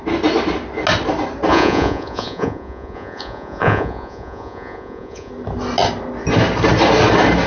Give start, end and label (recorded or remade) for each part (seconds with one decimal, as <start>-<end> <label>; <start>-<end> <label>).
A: 0.0-1.5 recorded; 1.5-5.3 remade; 5.3-7.5 recorded